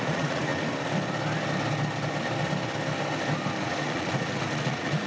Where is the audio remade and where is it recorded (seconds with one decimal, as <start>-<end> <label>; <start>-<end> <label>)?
0.0-0.5 remade; 0.5-3.6 recorded; 3.6-5.1 remade